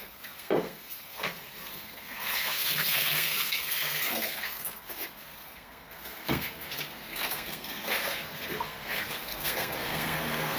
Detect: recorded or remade remade